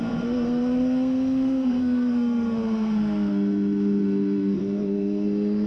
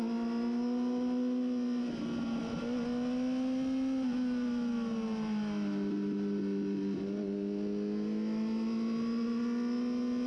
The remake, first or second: first